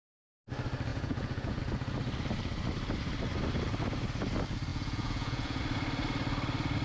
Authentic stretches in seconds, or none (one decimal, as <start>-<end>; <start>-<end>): 0.0-0.9; 1.6-4.7; 5.6-6.8